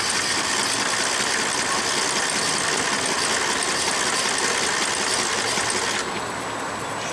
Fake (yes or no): no